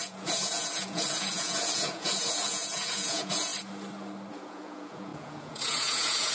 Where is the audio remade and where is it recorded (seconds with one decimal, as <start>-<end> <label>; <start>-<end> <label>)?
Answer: 0.0-3.5 remade; 3.5-4.3 recorded; 4.3-6.3 remade